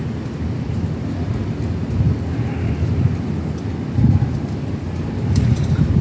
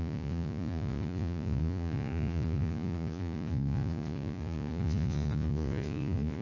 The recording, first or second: first